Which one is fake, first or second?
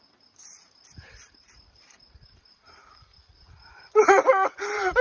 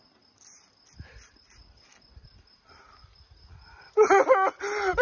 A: first